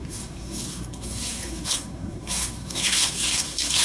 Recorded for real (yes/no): no